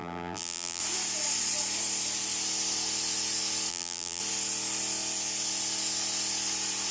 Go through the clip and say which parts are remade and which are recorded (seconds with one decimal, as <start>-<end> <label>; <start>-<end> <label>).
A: 0.0-0.8 remade; 0.8-3.7 recorded; 3.7-4.2 remade; 4.2-6.9 recorded